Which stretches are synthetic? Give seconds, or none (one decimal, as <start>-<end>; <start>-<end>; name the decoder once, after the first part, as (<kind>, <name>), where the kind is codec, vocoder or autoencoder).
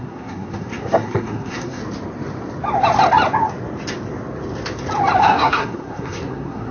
0.0-1.8 (codec, SNAC); 5.2-6.7